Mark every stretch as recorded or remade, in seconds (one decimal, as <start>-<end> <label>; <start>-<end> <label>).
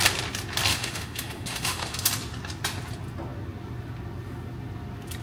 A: 0.0-0.7 recorded; 0.7-2.1 remade; 2.1-5.2 recorded